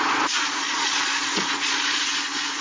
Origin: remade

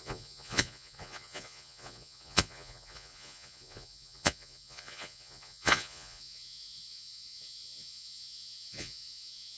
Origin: remade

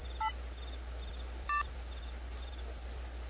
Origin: recorded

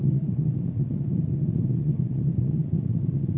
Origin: remade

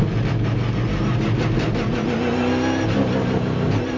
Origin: recorded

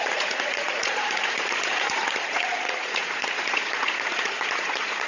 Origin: remade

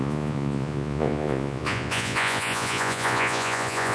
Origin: remade